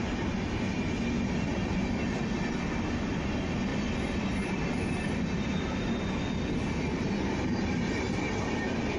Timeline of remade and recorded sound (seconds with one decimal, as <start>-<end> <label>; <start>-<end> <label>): 0.0-3.7 recorded; 3.7-5.2 remade; 5.2-9.0 recorded